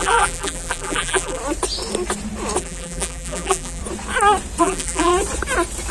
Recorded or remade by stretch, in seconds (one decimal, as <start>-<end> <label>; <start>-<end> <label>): 0.0-1.4 remade; 1.4-2.6 recorded; 2.6-3.8 remade; 3.8-4.6 recorded; 4.6-5.1 remade; 5.1-5.9 recorded